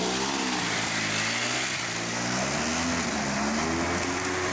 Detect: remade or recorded recorded